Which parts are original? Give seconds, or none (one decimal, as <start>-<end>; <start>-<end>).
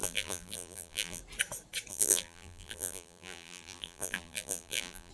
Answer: 1.2-1.9